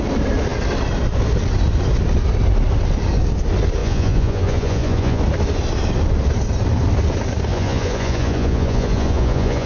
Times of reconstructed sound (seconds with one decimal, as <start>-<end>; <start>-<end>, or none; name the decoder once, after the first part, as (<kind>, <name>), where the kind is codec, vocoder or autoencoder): 3.8-5.2 (vocoder, Vocos); 7.5-9.7